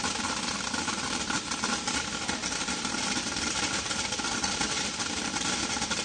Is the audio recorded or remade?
remade